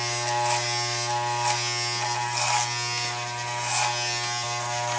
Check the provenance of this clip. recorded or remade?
recorded